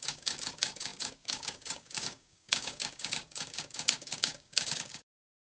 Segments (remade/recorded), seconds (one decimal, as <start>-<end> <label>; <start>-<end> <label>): 0.0-5.5 remade

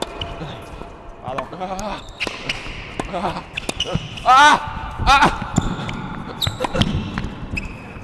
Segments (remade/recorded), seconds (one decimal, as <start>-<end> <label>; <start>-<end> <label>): 0.0-4.5 recorded; 4.5-5.0 remade; 5.0-8.0 recorded